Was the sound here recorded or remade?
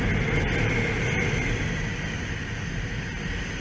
recorded